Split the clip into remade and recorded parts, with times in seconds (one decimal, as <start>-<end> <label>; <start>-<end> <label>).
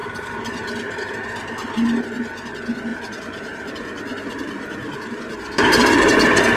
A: 0.0-1.7 remade; 1.7-2.9 recorded; 2.9-5.2 remade; 5.2-6.6 recorded